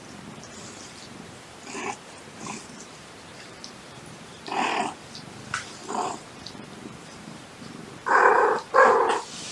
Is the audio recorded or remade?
remade